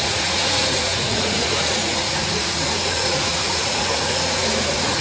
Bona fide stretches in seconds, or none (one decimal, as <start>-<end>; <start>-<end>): none